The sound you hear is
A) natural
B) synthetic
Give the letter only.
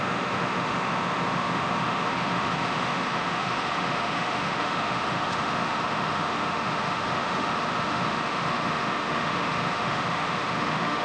B